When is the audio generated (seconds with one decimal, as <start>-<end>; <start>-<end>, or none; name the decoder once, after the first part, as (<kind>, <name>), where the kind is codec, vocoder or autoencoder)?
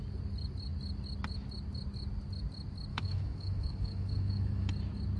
2.9-4.7 (autoencoder, DAC-VAE)